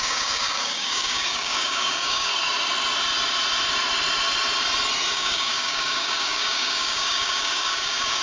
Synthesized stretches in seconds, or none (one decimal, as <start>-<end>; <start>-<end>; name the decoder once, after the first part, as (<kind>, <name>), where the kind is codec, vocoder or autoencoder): 0.0-2.3 (codec, DAC); 5.1-8.2